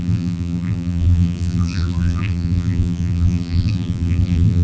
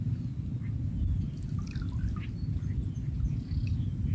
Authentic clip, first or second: second